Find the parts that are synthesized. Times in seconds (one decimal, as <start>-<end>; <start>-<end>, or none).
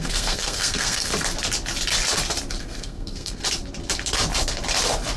0.0-1.1; 2.6-3.4